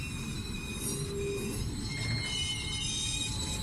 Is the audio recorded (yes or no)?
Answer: yes